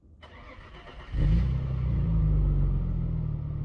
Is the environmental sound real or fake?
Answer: real